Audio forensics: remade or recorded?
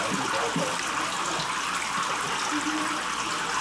recorded